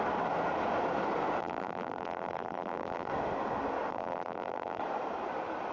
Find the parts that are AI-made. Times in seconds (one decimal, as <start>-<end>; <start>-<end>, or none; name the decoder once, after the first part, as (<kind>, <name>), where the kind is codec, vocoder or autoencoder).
1.4-3.1 (vocoder, BigVGAN v2); 3.9-4.8